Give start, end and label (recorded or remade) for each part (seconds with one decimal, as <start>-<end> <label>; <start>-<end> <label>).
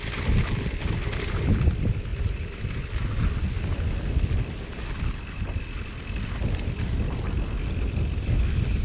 0.0-8.8 recorded